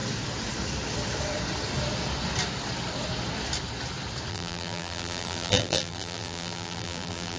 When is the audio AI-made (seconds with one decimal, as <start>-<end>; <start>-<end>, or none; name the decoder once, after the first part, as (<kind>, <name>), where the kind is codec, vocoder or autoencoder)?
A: 4.3-7.4 (vocoder, BigVGAN v2)